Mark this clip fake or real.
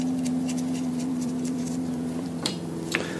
fake